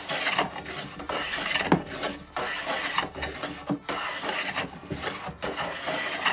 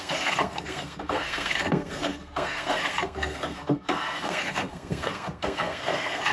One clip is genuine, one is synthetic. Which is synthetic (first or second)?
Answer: second